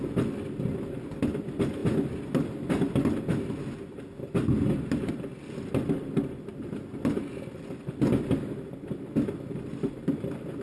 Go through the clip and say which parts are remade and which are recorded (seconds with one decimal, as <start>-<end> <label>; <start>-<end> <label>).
0.0-10.6 recorded